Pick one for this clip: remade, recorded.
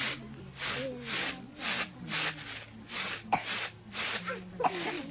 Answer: recorded